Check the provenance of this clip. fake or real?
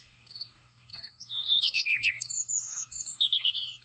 fake